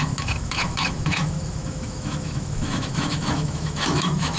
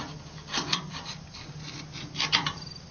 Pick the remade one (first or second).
first